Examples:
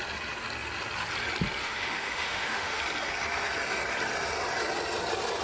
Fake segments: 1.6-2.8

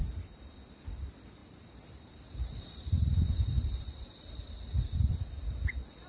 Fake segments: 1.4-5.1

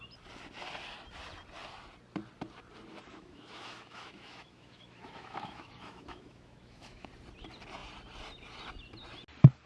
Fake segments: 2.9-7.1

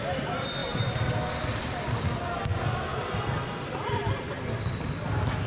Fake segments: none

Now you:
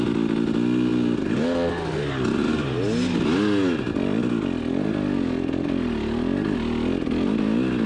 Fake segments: none

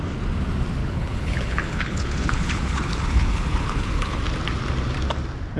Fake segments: 0.8-4.2